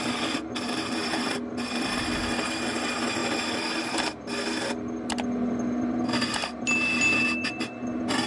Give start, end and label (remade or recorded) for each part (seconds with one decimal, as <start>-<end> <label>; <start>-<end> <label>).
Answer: 0.0-8.3 recorded

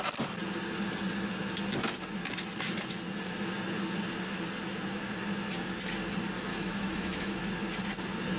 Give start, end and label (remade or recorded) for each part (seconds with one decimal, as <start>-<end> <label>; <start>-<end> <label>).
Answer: 0.0-6.5 recorded; 6.5-7.4 remade; 7.4-8.4 recorded

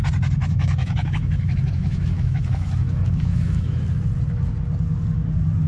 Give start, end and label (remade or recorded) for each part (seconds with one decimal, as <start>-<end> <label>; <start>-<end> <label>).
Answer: 0.0-0.4 recorded; 0.4-3.8 remade; 3.8-5.7 recorded